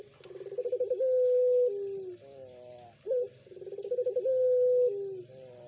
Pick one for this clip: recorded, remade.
recorded